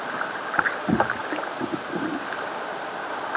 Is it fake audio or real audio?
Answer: real